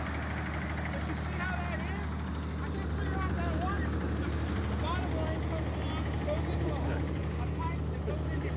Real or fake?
real